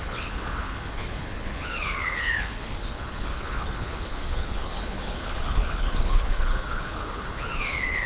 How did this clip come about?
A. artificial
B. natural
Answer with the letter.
A